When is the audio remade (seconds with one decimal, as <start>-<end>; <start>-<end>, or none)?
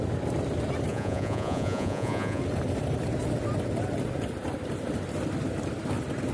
0.9-2.4